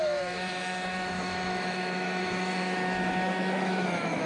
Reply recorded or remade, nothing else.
remade